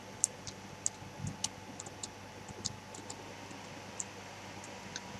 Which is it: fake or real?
real